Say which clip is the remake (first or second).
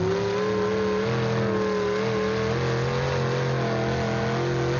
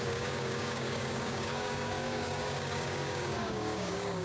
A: second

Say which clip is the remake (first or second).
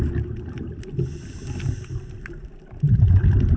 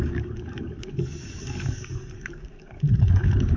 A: second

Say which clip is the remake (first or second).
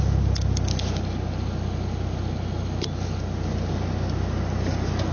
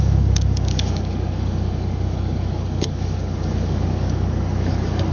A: second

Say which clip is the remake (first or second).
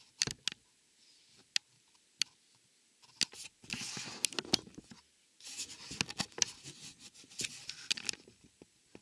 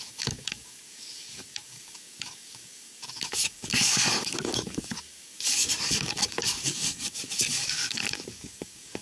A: second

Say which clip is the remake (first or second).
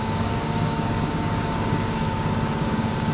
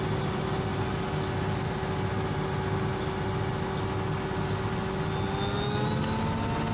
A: first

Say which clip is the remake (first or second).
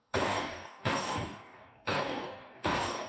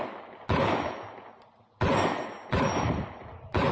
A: first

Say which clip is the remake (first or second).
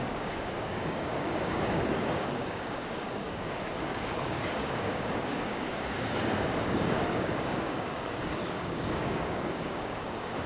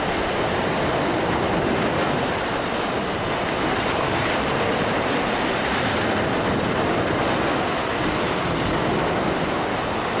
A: first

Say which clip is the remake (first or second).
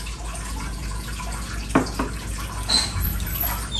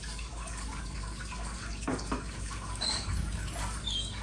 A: second